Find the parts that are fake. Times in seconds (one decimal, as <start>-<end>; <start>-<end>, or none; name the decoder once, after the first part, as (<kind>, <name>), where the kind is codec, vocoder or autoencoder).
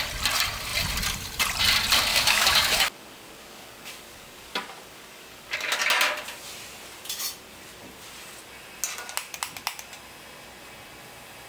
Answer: 2.1-5.8 (codec, DAC)